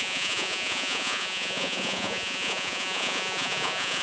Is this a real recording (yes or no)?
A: no